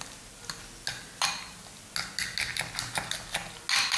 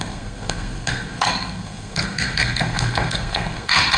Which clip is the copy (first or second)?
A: second